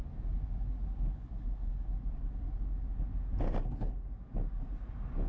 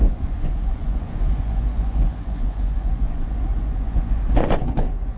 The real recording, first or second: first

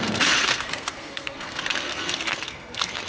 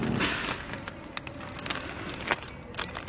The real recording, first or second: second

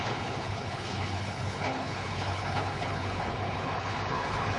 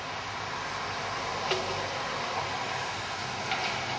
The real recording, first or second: second